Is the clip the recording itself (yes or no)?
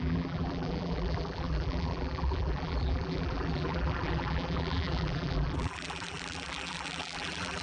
no